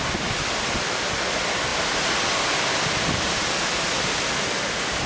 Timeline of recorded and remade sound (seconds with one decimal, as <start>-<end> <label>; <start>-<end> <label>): 0.0-5.1 recorded